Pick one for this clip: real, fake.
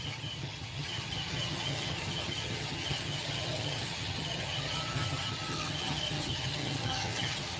fake